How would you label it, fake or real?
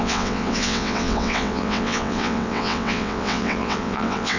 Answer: fake